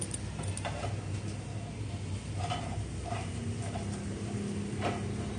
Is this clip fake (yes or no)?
no